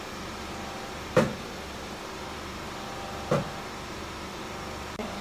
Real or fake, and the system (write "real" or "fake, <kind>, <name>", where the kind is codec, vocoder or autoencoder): fake, vocoder, BigVGAN v2